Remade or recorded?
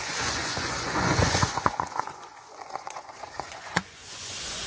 remade